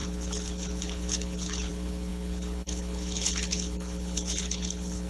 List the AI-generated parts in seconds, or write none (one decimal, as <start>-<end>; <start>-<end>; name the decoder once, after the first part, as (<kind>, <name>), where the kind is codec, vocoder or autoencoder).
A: 0.0-5.1 (codec, HILCodec)